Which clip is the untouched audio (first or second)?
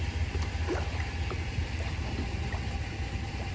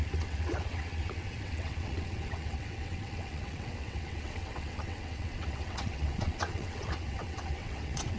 first